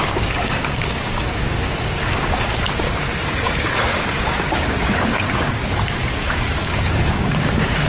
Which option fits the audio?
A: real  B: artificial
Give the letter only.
B